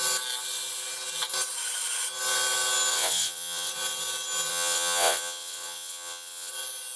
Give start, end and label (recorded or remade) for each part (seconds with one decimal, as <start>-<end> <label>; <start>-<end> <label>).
0.0-2.9 recorded; 2.9-3.7 remade; 3.7-4.5 recorded; 4.5-6.5 remade; 6.5-7.0 recorded